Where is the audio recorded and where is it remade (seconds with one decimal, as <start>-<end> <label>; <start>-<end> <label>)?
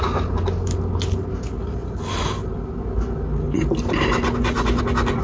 0.0-5.2 recorded